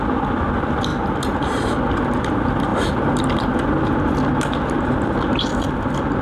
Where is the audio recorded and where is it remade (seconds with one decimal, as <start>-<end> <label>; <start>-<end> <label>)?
0.0-6.2 recorded

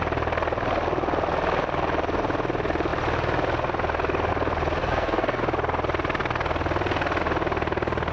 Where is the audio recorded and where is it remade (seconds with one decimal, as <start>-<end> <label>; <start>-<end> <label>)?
0.0-4.8 recorded; 4.8-5.4 remade; 5.4-8.1 recorded

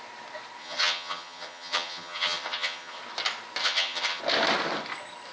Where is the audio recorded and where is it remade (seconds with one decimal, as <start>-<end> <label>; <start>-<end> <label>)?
0.0-0.6 recorded; 0.6-3.0 remade; 3.0-3.6 recorded; 3.6-4.2 remade; 4.2-5.3 recorded

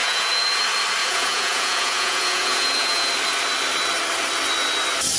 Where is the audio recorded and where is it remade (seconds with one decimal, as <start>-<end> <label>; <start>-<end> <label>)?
0.0-0.6 remade; 0.6-1.0 recorded; 1.0-3.1 remade; 3.1-5.2 recorded

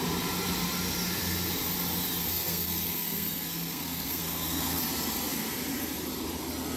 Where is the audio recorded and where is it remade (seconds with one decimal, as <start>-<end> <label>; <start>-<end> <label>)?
0.0-2.2 recorded; 2.2-4.8 remade; 4.8-6.8 recorded

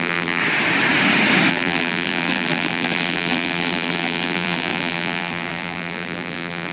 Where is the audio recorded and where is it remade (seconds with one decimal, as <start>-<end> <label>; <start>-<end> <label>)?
0.0-0.4 remade; 0.4-1.5 recorded; 1.5-6.7 remade

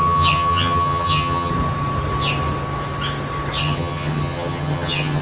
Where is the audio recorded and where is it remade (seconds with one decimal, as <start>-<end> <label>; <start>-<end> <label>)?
0.0-1.5 remade; 1.5-3.6 recorded; 3.6-5.2 remade

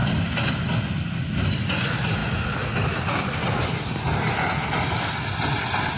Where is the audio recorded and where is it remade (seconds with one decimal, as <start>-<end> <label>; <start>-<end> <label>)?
0.0-6.0 recorded